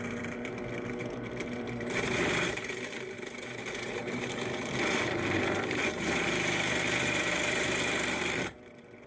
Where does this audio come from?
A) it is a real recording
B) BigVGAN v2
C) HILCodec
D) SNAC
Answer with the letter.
B